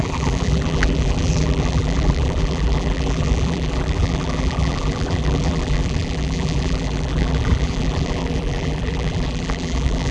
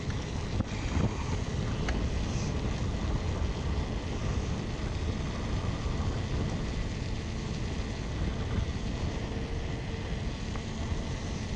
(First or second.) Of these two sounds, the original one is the second